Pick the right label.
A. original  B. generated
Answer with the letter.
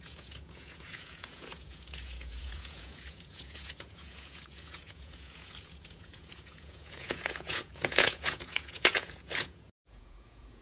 B